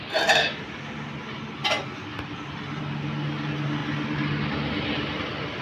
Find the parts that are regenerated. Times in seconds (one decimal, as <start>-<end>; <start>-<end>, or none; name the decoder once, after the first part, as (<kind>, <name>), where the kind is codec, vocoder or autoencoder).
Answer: none